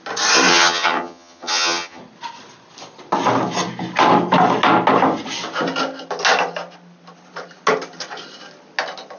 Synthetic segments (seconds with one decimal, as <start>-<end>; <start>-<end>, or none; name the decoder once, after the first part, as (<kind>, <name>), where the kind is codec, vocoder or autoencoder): 0.5-2.0 (vocoder, HiFi-GAN)